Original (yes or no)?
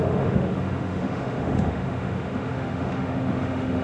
no